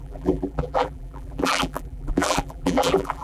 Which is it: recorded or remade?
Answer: remade